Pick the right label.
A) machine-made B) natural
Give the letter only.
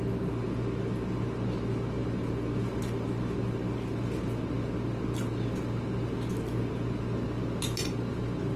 B